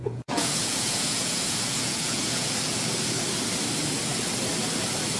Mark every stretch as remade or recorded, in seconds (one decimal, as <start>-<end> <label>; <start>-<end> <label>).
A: 0.0-2.5 remade; 2.5-5.2 recorded